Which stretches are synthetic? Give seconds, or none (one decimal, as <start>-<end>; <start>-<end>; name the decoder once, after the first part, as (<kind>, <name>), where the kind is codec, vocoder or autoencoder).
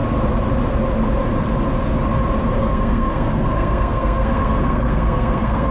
2.6-5.7 (codec, SNAC)